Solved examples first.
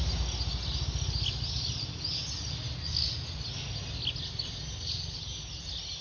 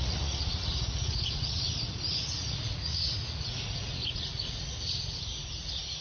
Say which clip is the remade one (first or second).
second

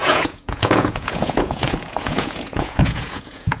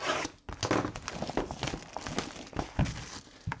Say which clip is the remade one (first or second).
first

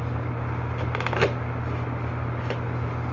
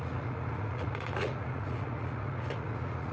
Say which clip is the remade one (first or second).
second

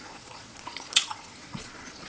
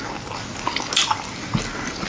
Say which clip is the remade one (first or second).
first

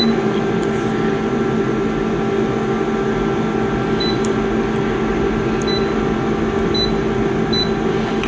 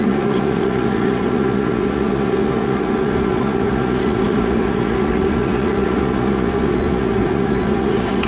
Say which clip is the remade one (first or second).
second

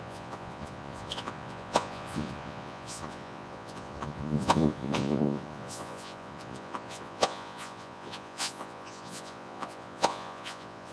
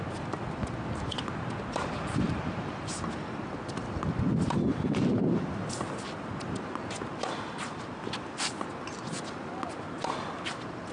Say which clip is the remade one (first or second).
first